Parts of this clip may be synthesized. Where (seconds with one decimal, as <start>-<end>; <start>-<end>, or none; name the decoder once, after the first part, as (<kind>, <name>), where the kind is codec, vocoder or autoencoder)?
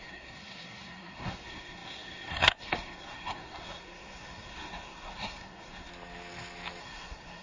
0.0-5.9 (codec, SNAC); 6.8-7.4